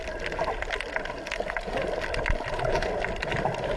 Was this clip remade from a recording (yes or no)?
no